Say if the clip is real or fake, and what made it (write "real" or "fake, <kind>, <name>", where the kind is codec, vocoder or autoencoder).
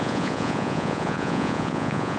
fake, vocoder, Vocos